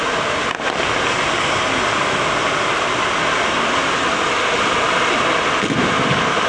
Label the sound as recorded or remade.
recorded